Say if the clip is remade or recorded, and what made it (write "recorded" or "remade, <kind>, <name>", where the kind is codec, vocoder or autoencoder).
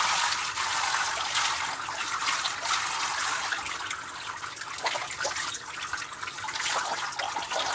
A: recorded